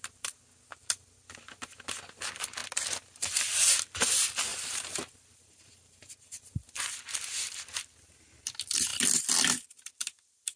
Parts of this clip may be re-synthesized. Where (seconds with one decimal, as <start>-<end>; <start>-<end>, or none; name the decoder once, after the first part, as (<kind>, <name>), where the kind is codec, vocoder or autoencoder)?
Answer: 4.5-6.8 (vocoder, BigVGAN v2)